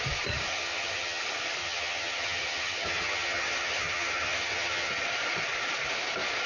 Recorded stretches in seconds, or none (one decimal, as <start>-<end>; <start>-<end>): 0.0-0.5; 1.2-1.6; 4.9-6.5